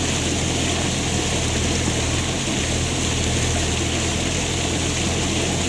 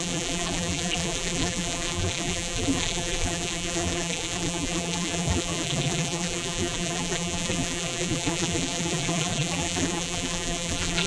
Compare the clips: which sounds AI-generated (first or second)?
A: second